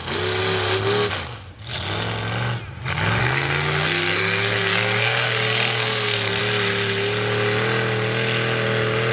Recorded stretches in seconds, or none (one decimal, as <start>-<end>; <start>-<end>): 0.0-3.2; 6.4-9.1